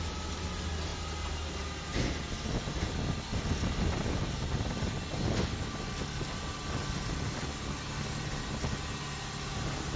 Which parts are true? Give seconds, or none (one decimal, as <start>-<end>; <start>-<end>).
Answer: 0.0-10.0

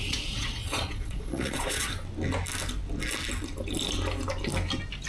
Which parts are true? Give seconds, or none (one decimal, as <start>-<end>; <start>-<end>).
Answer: 1.9-5.1